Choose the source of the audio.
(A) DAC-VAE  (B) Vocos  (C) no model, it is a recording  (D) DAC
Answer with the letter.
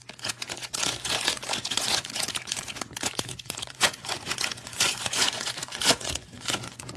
B